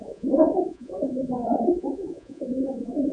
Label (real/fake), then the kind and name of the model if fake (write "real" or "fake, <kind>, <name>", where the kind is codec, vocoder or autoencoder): fake, vocoder, Vocos